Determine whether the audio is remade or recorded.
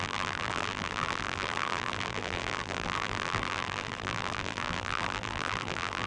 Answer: remade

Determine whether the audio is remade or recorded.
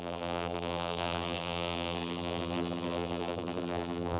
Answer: remade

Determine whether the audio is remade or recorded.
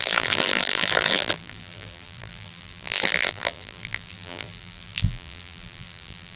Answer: remade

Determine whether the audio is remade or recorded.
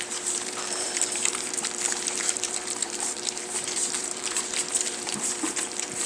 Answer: remade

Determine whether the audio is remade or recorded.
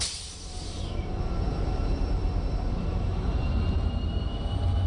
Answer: remade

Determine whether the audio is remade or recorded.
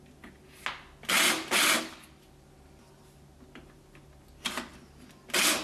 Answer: recorded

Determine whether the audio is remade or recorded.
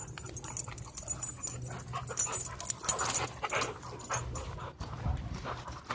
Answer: recorded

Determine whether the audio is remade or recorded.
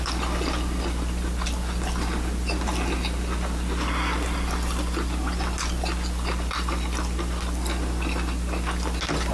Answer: recorded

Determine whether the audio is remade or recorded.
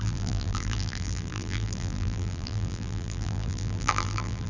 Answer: remade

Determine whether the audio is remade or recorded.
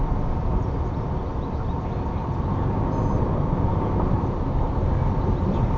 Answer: recorded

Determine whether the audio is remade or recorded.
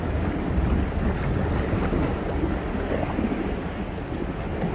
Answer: recorded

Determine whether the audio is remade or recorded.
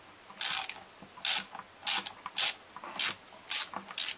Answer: recorded